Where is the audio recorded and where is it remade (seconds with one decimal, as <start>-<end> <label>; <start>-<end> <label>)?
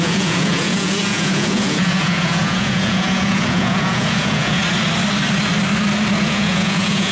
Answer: 0.0-4.6 remade; 4.6-6.2 recorded; 6.2-7.1 remade